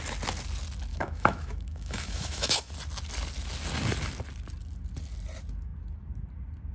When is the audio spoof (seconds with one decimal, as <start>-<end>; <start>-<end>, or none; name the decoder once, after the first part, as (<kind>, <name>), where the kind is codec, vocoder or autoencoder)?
0.9-2.7 (autoencoder, DAC-VAE)